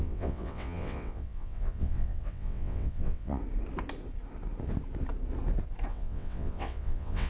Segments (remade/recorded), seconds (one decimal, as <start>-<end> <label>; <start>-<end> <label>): 0.0-3.4 remade; 3.4-5.9 recorded; 5.9-7.3 remade